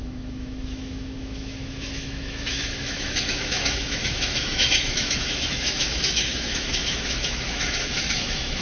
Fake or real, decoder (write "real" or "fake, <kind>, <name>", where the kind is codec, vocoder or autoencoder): fake, autoencoder, DAC-VAE